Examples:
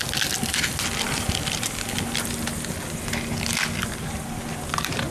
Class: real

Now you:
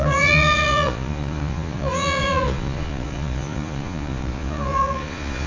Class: fake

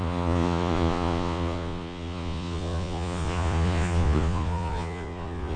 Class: fake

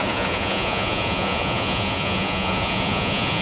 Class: fake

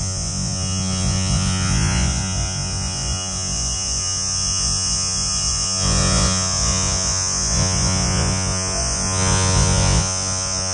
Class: fake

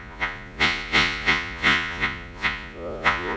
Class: fake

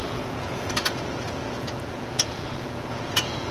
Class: fake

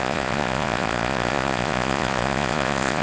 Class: fake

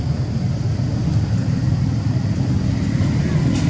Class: real